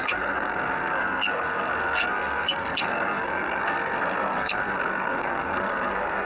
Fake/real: fake